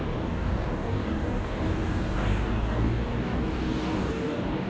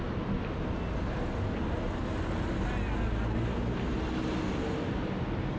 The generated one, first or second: first